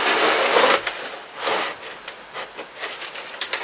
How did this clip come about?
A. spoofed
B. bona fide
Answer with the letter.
B